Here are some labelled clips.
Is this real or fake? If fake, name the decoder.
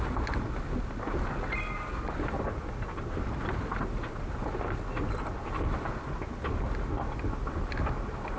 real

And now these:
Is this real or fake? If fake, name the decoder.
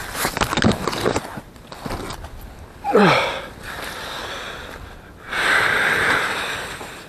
real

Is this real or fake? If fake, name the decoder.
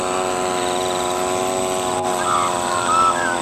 real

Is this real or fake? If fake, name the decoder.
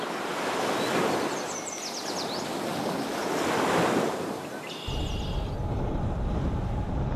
real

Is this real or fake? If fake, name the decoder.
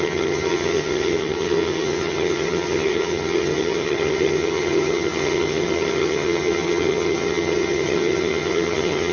fake, vocoder, HiFi-GAN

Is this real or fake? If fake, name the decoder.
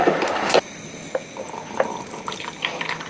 real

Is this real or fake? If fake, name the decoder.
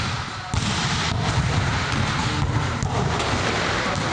real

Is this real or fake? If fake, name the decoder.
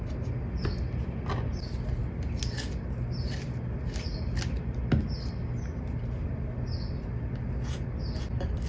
real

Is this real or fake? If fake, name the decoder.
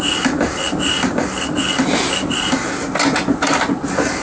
real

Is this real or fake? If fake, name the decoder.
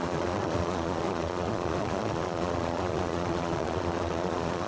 fake, vocoder, Vocos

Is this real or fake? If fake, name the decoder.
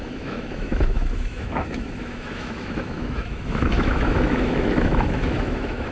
fake, autoencoder, DAC-VAE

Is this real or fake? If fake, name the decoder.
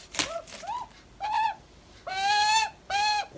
real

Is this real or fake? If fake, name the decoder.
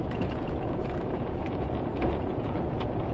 fake, vocoder, Vocos